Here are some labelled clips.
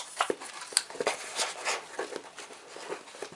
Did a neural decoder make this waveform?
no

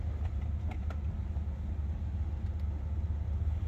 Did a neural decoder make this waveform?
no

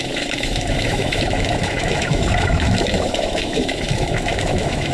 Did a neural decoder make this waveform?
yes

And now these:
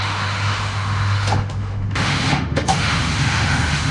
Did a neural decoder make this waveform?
yes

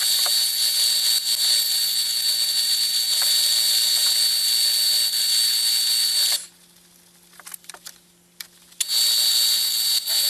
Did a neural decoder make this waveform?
no